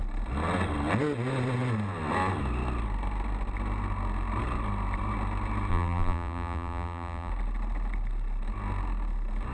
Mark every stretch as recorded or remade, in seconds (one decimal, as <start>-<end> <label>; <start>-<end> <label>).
0.0-5.7 recorded; 5.7-7.3 remade; 7.3-9.5 recorded